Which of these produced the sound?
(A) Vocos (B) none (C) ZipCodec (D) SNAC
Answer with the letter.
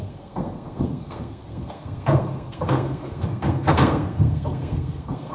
D